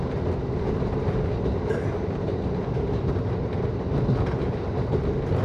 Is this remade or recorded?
recorded